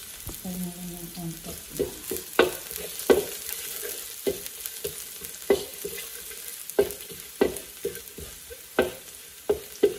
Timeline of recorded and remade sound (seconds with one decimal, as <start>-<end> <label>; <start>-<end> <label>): 0.0-10.0 recorded